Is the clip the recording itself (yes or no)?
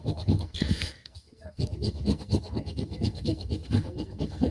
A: no